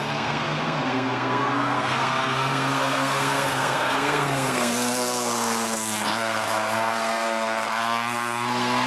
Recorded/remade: remade